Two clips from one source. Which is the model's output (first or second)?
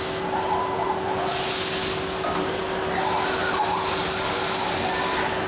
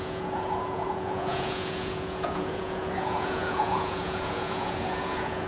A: second